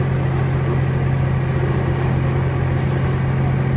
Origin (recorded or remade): recorded